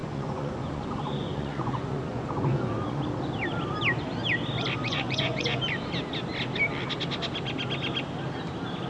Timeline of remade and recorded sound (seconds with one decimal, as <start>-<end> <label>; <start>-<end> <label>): 0.0-3.0 remade; 3.0-4.8 recorded; 4.8-5.6 remade; 5.6-8.9 recorded